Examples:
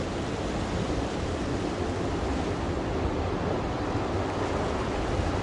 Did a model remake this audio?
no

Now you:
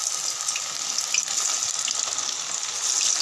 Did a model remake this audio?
no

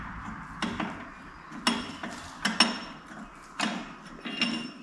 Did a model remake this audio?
no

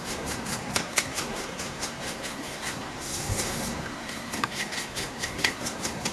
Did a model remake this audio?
yes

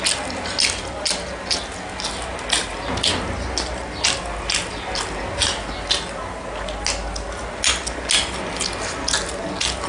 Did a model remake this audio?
no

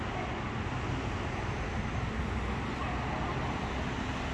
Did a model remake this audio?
no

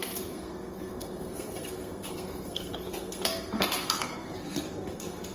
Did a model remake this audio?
yes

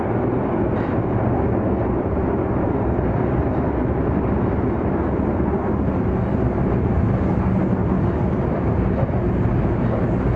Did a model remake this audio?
no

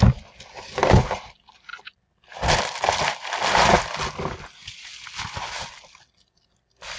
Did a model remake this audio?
no